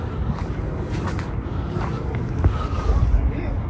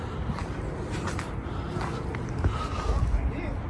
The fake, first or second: first